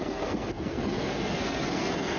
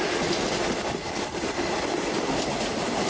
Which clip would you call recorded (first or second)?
second